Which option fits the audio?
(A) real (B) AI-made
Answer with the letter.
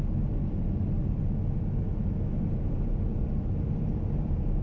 A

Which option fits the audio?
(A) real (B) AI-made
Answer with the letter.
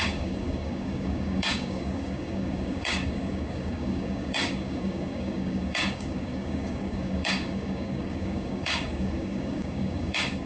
B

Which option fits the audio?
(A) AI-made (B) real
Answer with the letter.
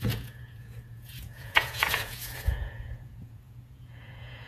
A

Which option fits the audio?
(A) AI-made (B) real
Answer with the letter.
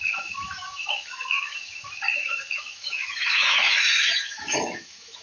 A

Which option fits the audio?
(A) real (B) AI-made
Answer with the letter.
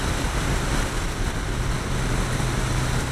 A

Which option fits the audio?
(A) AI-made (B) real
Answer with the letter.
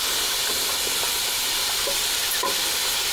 B